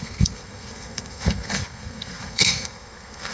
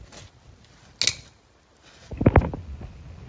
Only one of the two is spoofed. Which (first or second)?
first